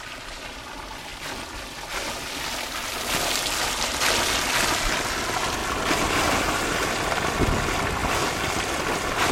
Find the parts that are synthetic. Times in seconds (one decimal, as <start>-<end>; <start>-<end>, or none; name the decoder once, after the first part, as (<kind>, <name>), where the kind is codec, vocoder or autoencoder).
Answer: none